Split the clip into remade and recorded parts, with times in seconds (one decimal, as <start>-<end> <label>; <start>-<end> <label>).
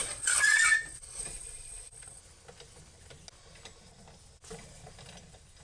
0.0-2.2 remade; 2.2-5.6 recorded